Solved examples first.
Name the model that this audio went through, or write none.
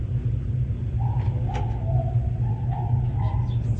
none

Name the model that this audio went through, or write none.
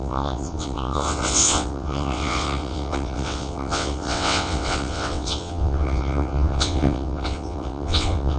vocoder, WaveNeXt